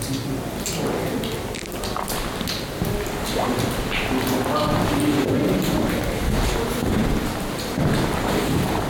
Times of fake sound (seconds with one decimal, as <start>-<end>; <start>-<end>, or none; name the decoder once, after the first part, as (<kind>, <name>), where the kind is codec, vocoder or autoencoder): none